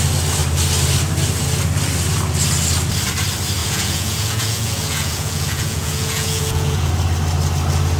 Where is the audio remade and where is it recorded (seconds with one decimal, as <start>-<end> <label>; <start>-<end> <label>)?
0.0-3.6 recorded; 3.6-6.9 remade; 6.9-8.0 recorded